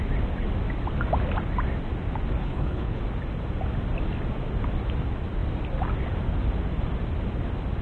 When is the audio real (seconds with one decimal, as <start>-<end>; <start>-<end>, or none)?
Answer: 0.0-2.4; 3.0-7.8